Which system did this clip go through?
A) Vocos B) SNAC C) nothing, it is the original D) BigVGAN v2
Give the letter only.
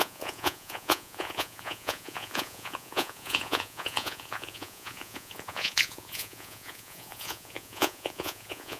A